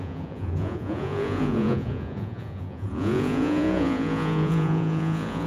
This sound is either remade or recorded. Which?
remade